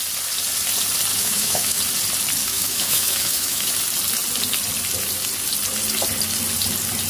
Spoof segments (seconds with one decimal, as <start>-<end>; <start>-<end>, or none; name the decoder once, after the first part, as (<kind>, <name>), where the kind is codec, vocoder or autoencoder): 1.1-1.8 (autoencoder, DAC-VAE); 2.4-3.7